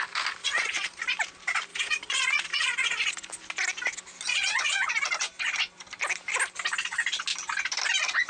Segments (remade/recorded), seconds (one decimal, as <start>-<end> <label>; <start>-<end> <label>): 0.0-0.4 recorded; 0.4-1.0 remade; 1.0-1.7 recorded; 1.7-3.1 remade; 3.1-4.3 recorded; 4.3-4.9 remade; 4.9-8.3 recorded